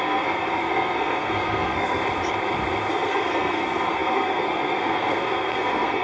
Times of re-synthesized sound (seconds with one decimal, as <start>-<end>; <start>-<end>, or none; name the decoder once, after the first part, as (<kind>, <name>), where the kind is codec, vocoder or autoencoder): 0.0-2.0 (codec, SNAC); 2.9-6.0